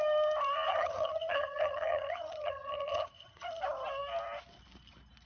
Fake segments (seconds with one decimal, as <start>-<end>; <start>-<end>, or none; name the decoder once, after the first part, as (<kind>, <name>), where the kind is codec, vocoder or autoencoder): 0.7-3.6 (vocoder, HiFi-GAN)